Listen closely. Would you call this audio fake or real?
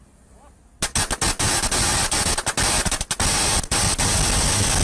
real